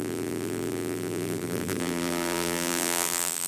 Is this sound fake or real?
fake